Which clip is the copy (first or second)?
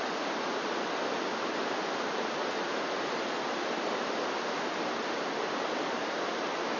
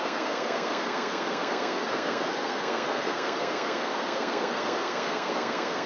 second